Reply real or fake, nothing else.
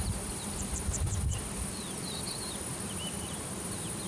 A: fake